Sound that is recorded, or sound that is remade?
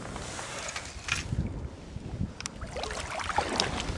recorded